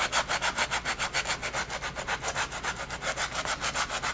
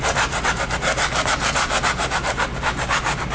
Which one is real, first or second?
first